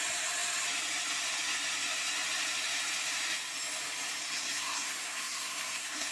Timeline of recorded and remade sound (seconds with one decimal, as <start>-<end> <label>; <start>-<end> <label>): 0.0-4.2 recorded; 4.2-6.1 remade